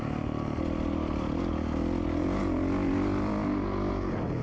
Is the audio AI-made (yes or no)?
no